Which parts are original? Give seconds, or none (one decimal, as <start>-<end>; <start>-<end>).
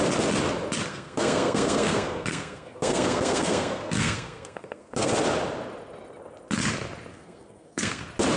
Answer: 0.0-0.9; 5.1-7.1; 8.0-8.4